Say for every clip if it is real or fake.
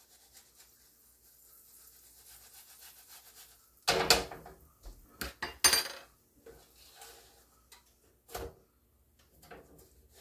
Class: real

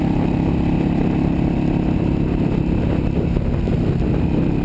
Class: real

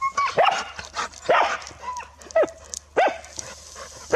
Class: real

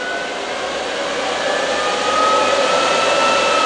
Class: real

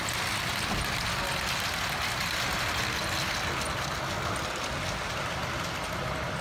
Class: real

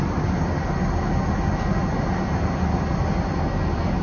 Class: real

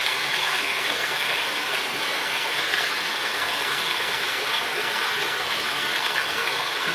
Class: fake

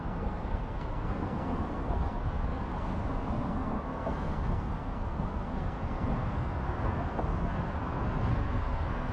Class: fake